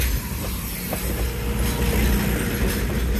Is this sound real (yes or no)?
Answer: yes